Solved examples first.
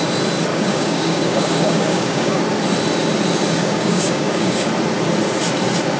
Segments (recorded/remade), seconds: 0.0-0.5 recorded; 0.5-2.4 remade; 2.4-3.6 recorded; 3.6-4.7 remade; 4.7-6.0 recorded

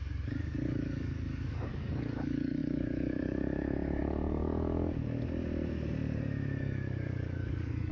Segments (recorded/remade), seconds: 0.0-5.0 remade; 5.0-6.6 recorded; 6.6-7.9 remade

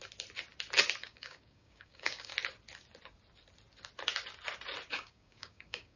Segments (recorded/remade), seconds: 0.0-1.0 recorded; 1.0-2.3 remade; 2.3-4.9 recorded; 4.9-6.0 remade

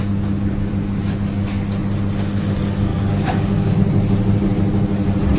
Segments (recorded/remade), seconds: 0.0-0.7 remade; 0.7-2.9 recorded; 2.9-3.7 remade; 3.7-5.4 recorded

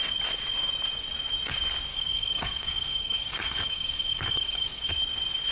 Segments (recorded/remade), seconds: 0.0-1.9 recorded; 1.9-4.9 remade; 4.9-5.5 recorded

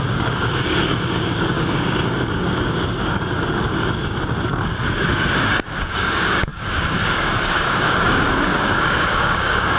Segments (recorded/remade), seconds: 0.0-9.8 remade

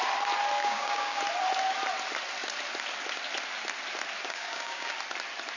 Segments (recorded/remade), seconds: 0.0-0.6 recorded; 0.6-1.2 remade; 1.2-4.2 recorded; 4.2-4.9 remade; 4.9-5.6 recorded